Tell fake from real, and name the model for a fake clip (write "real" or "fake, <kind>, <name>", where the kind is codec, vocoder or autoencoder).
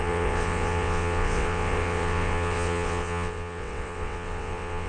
fake, vocoder, WaveNeXt